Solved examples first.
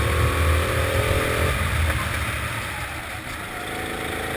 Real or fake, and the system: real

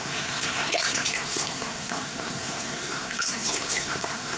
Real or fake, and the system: fake, codec, SNAC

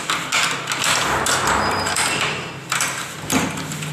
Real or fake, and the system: real